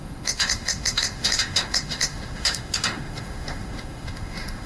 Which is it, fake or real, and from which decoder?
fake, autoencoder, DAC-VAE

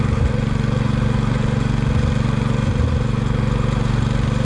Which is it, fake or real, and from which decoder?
real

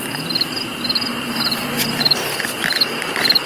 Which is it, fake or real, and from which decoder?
real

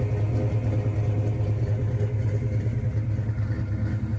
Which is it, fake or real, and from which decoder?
real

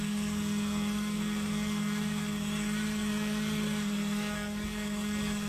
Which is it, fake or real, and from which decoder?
fake, codec, SNAC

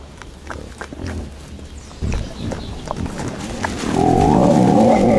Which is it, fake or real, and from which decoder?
real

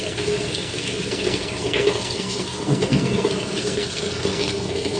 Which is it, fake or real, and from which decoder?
fake, codec, SNAC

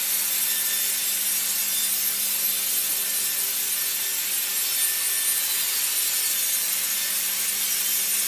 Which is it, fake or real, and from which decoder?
real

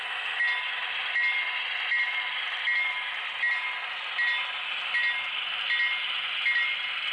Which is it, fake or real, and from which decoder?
real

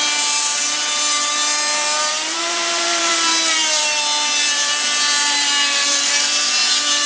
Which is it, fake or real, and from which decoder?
fake, vocoder, BigVGAN v2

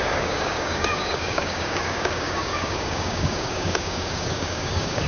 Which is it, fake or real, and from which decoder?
fake, codec, DAC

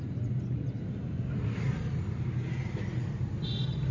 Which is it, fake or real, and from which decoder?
real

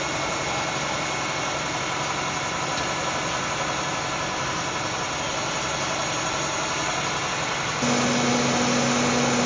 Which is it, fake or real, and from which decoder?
real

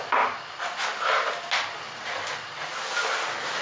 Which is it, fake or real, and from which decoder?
real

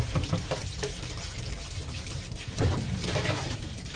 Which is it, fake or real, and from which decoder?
fake, vocoder, BigVGAN v2